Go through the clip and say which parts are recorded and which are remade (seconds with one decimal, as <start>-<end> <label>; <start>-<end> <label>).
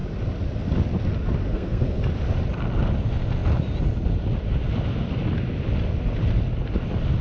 0.0-1.5 recorded; 1.5-2.0 remade; 2.0-7.2 recorded